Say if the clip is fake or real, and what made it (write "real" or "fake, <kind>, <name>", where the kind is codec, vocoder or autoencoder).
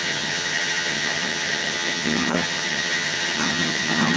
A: fake, vocoder, HiFi-GAN